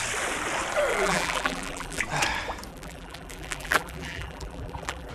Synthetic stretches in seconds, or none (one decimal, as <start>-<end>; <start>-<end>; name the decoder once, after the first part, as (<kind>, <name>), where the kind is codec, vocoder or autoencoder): 0.9-2.0 (vocoder, BigVGAN v2); 2.7-5.1